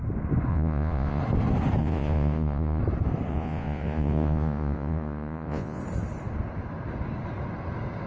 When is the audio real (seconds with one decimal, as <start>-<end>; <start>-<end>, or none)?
0.0-0.5; 1.2-1.8; 2.8-3.3; 5.8-8.1